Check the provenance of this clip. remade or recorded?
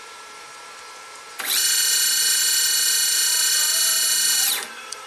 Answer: remade